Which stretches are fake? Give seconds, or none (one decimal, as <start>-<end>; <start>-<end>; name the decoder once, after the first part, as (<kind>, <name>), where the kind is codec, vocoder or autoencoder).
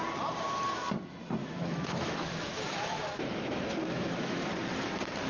1.4-4.5 (autoencoder, DAC-VAE)